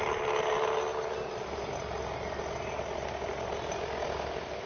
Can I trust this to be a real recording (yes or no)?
yes